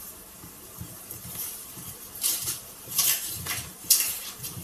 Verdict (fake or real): fake